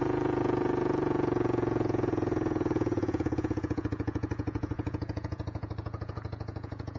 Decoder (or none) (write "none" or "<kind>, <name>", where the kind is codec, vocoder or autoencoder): vocoder, Vocos